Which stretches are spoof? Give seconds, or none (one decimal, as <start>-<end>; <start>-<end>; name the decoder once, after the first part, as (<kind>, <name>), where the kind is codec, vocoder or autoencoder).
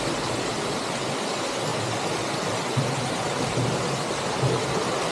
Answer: none